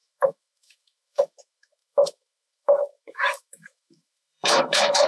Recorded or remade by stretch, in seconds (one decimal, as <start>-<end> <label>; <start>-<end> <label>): 0.0-5.1 remade